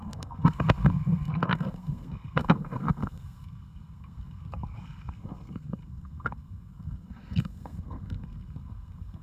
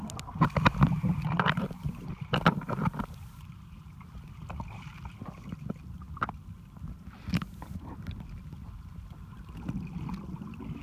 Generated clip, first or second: first